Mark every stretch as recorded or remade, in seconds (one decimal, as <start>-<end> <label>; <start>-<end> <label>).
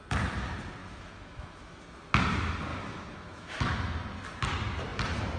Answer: 0.0-0.8 recorded; 0.8-2.1 remade; 2.1-2.7 recorded; 2.7-3.6 remade; 3.6-5.4 recorded